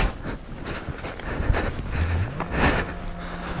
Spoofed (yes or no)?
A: no